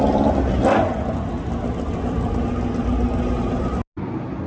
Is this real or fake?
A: real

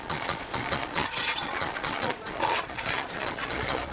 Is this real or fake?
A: fake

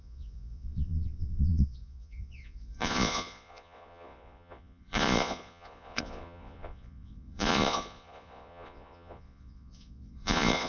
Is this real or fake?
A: fake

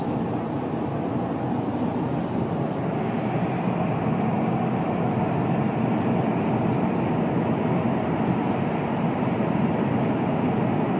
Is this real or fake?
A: real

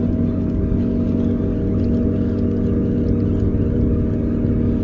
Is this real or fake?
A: real